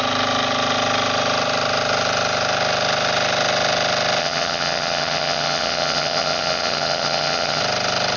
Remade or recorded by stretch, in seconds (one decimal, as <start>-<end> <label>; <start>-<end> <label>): 0.0-4.2 recorded; 4.2-7.6 remade; 7.6-8.2 recorded